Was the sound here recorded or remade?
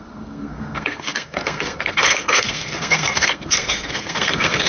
remade